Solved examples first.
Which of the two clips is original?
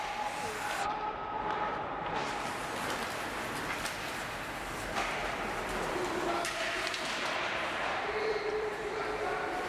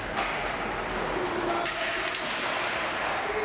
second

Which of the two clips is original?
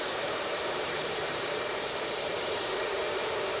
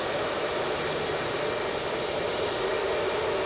second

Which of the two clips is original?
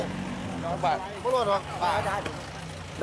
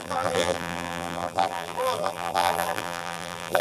first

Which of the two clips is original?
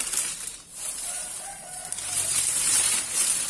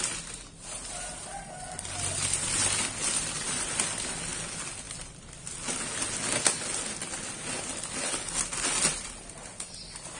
second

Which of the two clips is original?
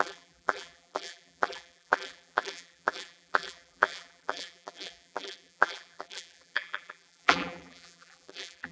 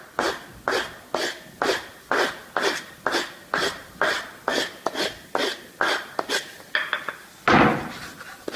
second